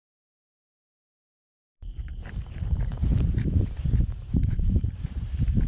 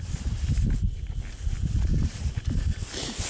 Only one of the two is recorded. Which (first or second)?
second